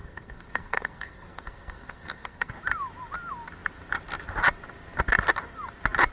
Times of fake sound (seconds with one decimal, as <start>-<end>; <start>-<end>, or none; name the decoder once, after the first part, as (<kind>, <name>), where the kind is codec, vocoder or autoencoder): 0.0-2.5 (codec, SNAC)